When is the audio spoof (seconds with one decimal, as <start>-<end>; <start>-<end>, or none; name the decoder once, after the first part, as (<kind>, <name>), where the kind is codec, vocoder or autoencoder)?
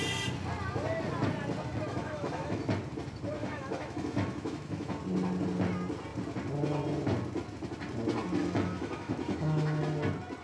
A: 1.9-2.6 (autoencoder, DAC-VAE); 3.4-5.0; 8.4-9.8